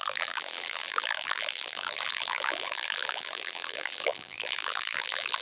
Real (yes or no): no